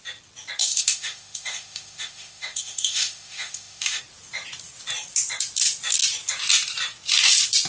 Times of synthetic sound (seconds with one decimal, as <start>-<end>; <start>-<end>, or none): 0.6-4.0